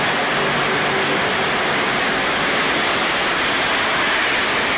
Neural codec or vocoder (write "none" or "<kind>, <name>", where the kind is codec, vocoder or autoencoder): none